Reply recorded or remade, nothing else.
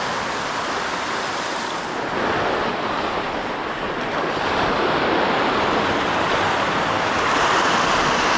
recorded